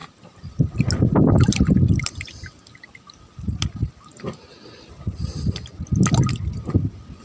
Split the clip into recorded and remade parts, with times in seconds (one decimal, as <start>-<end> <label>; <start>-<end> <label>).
0.0-7.2 recorded